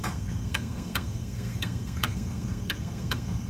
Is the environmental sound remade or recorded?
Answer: remade